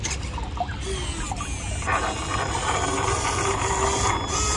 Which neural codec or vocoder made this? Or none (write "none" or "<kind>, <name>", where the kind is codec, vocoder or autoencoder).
none